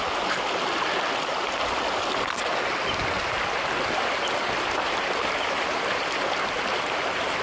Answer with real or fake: real